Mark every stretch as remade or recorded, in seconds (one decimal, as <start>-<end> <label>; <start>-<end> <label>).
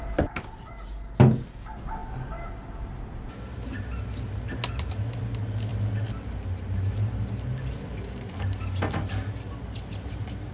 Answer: 0.0-10.5 recorded